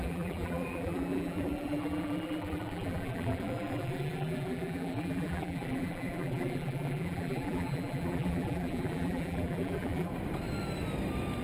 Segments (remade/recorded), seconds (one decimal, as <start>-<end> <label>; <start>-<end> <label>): 0.0-10.1 remade; 10.1-11.4 recorded